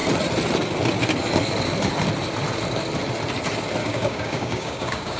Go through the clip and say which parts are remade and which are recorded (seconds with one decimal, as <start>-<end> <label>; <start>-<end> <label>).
0.0-3.8 recorded; 3.8-5.2 remade